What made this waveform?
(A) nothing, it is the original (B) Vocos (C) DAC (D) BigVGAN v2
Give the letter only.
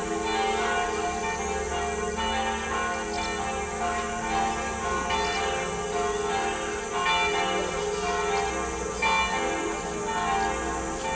A